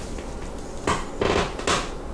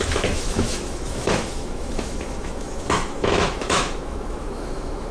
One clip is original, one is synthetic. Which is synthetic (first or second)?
second